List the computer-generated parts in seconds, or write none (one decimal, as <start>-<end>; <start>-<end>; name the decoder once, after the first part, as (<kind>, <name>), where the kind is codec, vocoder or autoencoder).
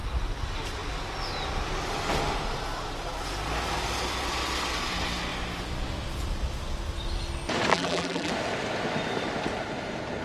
7.7-8.3 (vocoder, BigVGAN v2)